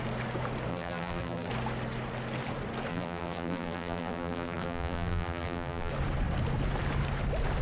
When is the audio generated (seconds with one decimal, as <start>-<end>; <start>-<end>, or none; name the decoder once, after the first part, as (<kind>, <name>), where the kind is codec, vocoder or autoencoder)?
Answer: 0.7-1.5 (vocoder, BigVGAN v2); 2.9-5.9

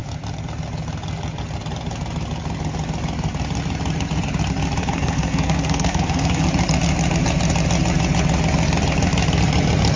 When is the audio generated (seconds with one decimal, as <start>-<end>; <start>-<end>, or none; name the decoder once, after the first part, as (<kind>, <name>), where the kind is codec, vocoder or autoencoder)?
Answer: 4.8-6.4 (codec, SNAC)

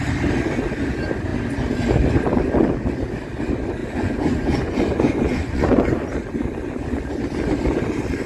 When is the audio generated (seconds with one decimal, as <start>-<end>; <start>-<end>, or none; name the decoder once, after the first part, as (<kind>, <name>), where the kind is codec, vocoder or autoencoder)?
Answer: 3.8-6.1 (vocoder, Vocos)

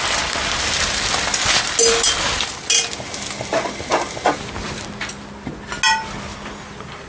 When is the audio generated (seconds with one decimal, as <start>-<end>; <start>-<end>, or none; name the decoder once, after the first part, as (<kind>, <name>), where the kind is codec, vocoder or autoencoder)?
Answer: none